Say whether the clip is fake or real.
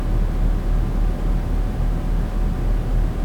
real